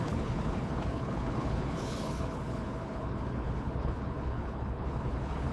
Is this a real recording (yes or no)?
no